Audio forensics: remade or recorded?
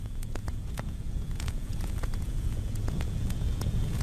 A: remade